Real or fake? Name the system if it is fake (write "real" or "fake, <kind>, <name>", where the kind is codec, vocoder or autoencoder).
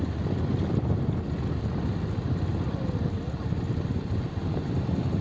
real